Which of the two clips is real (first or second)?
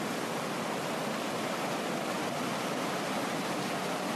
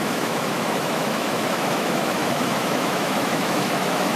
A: first